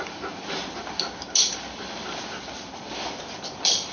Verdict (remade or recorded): recorded